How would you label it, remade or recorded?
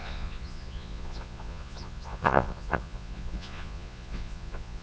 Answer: remade